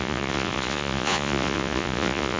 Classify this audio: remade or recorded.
remade